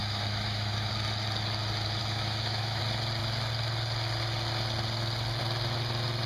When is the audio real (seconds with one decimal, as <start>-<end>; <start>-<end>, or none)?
0.9-2.0; 2.8-6.3